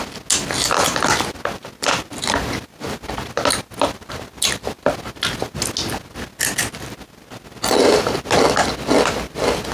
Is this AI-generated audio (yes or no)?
no